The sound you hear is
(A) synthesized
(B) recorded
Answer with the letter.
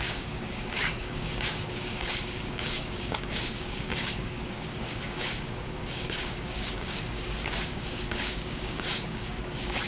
A